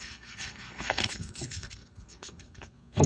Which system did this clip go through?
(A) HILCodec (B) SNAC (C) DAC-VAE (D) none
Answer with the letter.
B